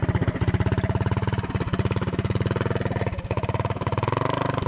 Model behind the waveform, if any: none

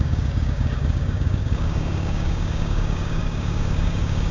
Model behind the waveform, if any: codec, DAC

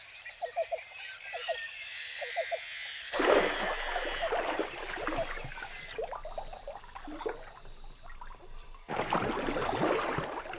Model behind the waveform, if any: none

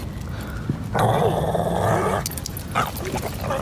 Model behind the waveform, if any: none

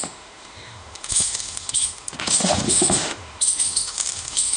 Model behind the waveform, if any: autoencoder, DAC-VAE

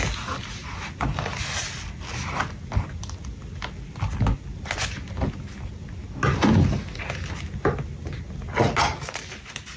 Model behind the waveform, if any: none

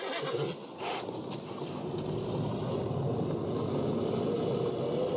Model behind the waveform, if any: none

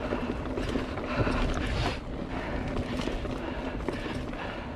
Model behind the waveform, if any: none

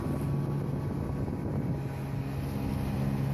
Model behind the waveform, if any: none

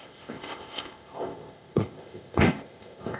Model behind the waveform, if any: codec, ZipCodec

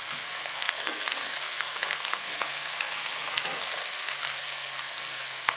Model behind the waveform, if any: codec, SNAC